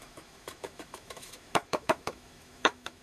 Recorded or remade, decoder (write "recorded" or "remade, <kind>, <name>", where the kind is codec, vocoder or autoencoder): remade, autoencoder, DAC-VAE